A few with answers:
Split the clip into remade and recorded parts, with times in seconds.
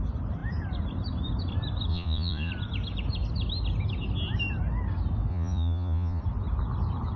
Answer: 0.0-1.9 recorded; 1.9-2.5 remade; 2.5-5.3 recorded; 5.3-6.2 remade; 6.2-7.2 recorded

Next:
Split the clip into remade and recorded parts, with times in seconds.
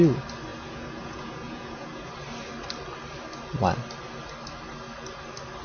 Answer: 0.0-0.5 recorded; 0.5-2.1 remade; 2.1-5.6 recorded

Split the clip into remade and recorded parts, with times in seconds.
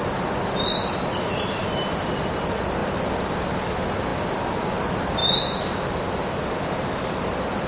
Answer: 0.0-7.7 recorded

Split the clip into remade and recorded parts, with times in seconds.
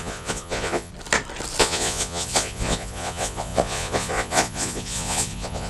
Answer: 0.0-0.9 remade; 0.9-1.6 recorded; 1.6-5.7 remade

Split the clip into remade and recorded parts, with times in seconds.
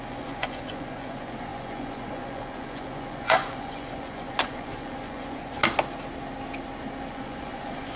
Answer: 0.0-5.6 remade; 5.6-7.1 recorded; 7.1-8.0 remade